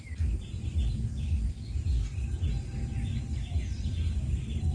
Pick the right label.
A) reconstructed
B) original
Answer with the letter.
B